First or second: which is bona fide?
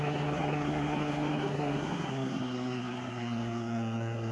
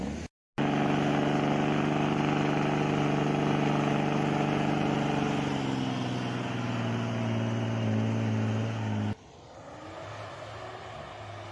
second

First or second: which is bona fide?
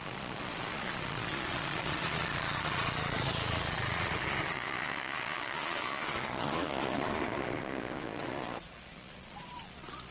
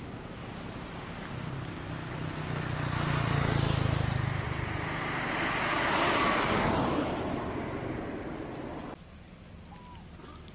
second